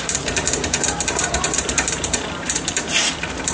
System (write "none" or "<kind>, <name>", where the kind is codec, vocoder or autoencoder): vocoder, BigVGAN v2